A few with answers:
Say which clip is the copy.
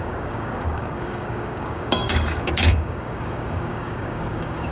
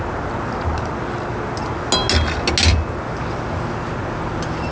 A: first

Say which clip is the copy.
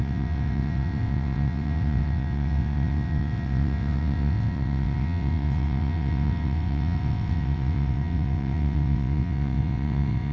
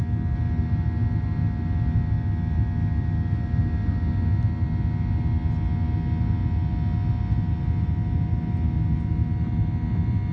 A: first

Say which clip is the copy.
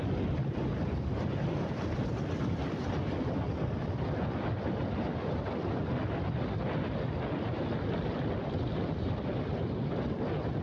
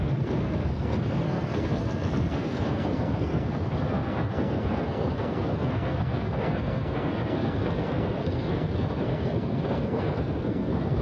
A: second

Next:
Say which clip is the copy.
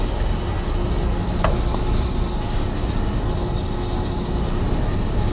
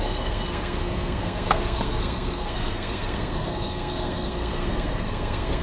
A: second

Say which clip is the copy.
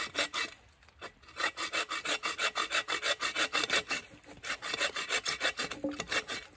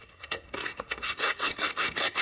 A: second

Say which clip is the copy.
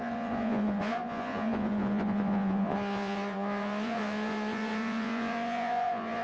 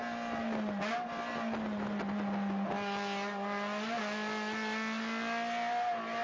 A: first